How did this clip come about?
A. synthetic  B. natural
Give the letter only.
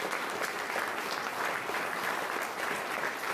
B